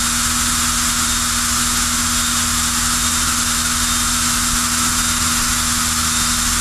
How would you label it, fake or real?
real